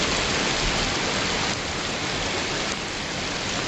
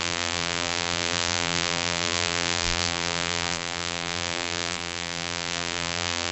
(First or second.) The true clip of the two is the first